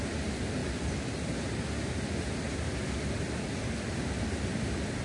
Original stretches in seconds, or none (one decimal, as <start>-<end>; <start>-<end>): 0.0-5.0